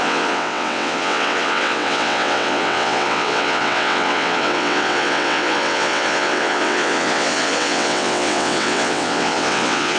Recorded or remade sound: remade